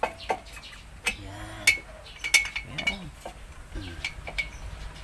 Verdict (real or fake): real